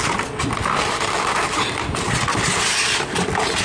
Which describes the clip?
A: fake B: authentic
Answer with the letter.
B